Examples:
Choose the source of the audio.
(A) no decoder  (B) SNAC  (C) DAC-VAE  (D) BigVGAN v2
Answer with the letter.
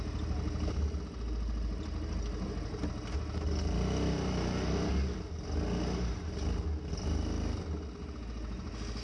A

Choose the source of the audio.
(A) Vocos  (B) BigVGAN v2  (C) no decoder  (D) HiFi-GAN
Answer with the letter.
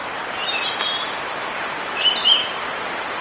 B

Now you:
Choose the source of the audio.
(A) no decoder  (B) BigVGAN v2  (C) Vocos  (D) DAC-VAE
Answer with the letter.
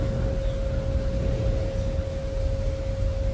A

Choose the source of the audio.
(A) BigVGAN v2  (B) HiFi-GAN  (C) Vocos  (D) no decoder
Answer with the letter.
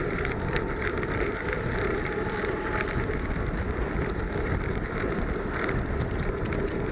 A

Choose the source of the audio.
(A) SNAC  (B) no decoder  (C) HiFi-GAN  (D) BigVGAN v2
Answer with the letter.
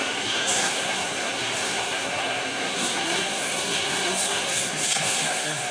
A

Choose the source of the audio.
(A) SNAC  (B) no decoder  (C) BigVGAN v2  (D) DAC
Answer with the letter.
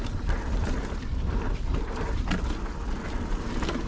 B